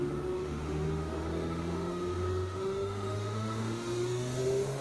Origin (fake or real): fake